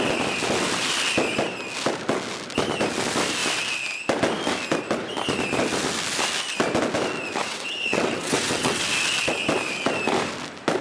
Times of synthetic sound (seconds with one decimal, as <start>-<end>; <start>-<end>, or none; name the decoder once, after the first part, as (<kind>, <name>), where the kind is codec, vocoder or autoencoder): 7.4-8.8 (vocoder, WaveNeXt)